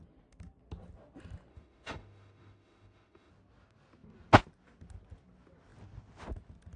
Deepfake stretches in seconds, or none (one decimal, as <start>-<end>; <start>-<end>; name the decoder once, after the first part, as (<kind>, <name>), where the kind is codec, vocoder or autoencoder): 1.5-3.3 (autoencoder, DAC-VAE)